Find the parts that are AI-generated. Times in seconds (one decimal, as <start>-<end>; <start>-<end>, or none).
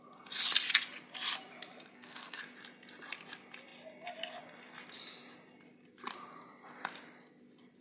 1.7-2.4